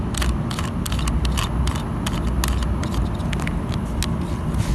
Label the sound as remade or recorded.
recorded